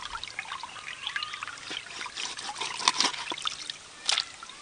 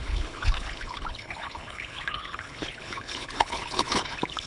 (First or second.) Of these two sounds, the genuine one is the first